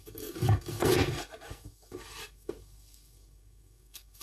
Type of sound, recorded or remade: remade